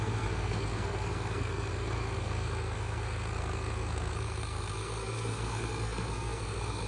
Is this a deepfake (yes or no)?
yes